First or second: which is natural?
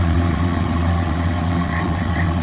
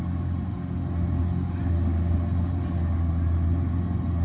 second